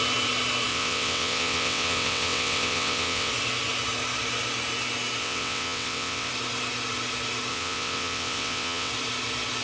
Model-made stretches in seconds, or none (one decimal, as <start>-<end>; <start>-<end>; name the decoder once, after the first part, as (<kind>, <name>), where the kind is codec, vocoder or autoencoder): 0.7-3.3 (vocoder, WaveNeXt); 5.2-6.3; 7.5-8.9